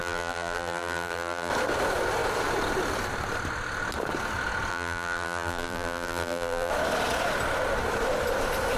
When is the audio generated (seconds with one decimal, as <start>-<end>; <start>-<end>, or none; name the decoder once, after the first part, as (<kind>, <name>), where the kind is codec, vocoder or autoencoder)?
0.0-1.5 (vocoder, BigVGAN v2); 4.7-6.7